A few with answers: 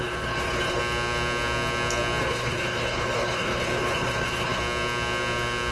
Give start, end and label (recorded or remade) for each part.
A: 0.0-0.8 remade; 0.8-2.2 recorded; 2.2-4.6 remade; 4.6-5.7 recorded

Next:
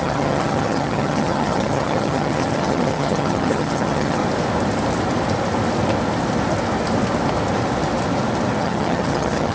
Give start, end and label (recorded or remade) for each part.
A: 0.0-4.2 remade; 4.2-8.6 recorded; 8.6-9.5 remade

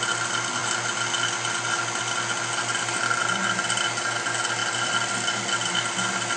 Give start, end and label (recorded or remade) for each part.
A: 0.0-6.4 recorded

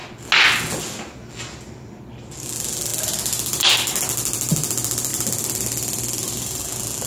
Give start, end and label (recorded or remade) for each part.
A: 0.0-2.9 recorded; 2.9-4.0 remade; 4.0-5.1 recorded; 5.1-6.6 remade; 6.6-7.1 recorded